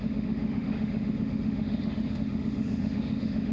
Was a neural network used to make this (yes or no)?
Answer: yes